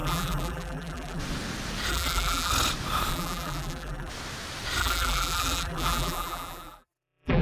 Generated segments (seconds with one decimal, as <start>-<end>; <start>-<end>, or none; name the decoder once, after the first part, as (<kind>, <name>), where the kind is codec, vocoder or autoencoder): 0.0-1.2 (vocoder, BigVGAN v2); 1.9-2.5; 3.1-4.1; 4.8-7.4